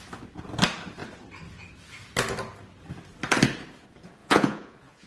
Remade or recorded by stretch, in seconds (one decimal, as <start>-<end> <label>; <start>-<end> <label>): 0.0-4.2 recorded; 4.2-5.1 remade